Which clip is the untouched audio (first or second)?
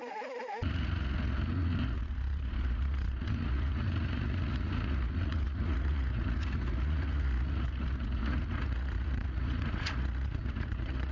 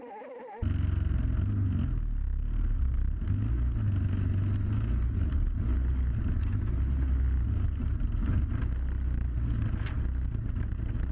second